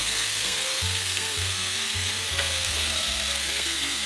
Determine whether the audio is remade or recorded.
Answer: remade